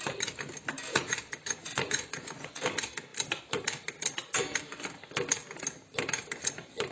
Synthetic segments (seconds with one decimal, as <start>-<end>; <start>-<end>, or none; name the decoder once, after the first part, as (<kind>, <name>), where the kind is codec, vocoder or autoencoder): 0.9-2.6 (vocoder, Vocos)